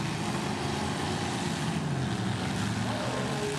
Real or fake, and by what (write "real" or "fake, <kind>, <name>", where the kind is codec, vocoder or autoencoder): real